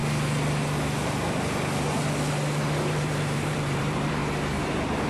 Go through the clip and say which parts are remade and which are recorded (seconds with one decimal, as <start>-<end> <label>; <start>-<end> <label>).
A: 0.0-2.8 recorded; 2.8-4.2 remade; 4.2-5.1 recorded